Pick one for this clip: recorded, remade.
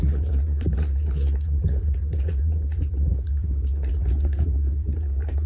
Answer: remade